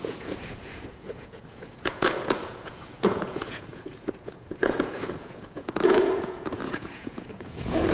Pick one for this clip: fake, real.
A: fake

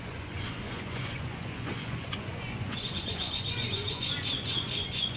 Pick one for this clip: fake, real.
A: fake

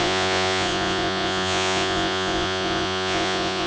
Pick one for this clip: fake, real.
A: fake